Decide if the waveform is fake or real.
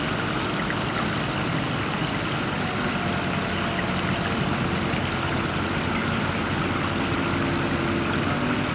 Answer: real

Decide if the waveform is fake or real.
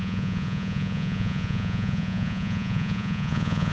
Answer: fake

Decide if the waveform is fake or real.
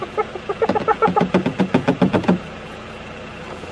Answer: fake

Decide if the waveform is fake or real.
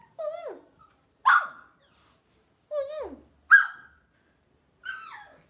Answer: real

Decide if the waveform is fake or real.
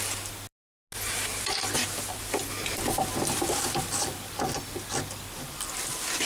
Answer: real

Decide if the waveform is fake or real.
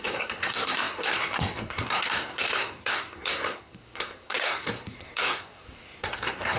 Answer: fake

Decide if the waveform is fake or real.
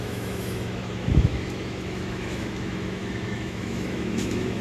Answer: fake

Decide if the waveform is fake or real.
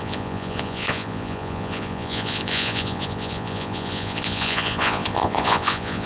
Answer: fake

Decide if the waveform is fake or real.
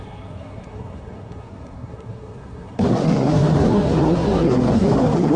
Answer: fake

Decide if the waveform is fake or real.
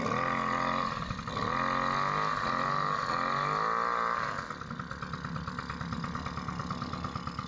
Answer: real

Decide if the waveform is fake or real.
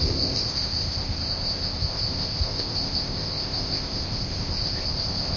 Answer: fake